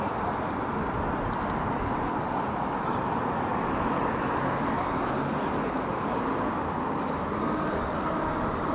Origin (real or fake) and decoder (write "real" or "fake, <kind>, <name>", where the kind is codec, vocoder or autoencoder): real